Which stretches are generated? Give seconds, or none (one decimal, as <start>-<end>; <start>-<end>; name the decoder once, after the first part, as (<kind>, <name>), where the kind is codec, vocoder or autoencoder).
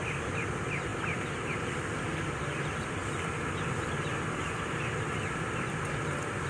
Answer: none